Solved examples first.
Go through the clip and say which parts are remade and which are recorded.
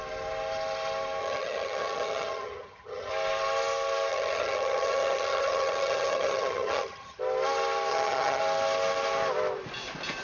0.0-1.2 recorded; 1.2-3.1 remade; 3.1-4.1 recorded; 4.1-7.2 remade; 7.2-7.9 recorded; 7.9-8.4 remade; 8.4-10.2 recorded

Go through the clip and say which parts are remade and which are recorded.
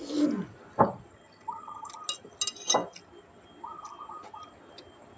0.0-1.1 recorded; 1.1-1.9 remade; 1.9-5.2 recorded